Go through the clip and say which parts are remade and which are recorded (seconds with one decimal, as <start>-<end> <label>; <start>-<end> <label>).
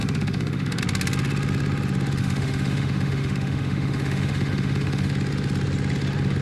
0.0-0.8 remade; 0.8-2.2 recorded; 2.2-5.1 remade; 5.1-6.4 recorded